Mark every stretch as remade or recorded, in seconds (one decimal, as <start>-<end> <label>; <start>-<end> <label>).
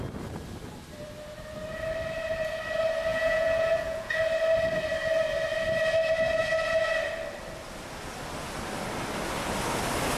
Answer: 0.0-3.1 recorded; 3.1-4.2 remade; 4.2-10.2 recorded